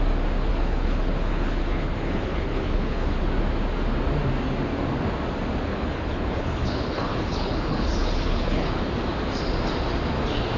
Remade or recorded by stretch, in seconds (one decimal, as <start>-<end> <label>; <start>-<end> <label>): 0.0-0.5 recorded; 0.5-3.2 remade; 3.2-5.7 recorded; 5.7-8.8 remade; 8.8-10.6 recorded